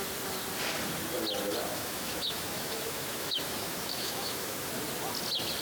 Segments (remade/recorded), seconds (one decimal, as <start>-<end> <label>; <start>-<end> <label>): 0.0-1.7 recorded; 1.7-4.7 remade; 4.7-5.6 recorded